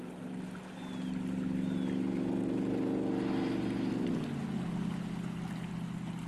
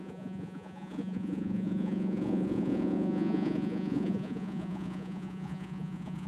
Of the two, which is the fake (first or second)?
second